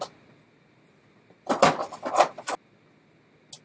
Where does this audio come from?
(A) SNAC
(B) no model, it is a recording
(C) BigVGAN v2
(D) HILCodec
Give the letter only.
B